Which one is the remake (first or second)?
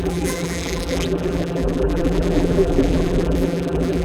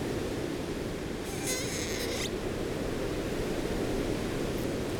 first